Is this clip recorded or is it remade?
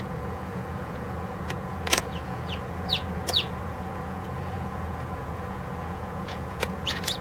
remade